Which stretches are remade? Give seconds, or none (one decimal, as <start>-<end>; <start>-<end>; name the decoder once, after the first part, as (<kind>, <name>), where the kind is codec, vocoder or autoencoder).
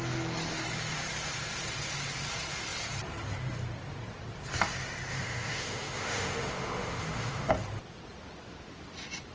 5.1-7.5 (autoencoder, DAC-VAE)